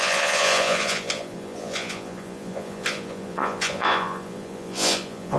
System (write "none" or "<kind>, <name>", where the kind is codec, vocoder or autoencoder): vocoder, Vocos